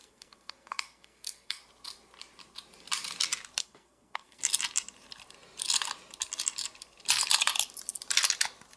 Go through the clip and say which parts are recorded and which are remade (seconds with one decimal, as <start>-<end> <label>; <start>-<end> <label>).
0.0-1.6 remade; 1.6-3.6 recorded; 3.6-4.4 remade; 4.4-8.8 recorded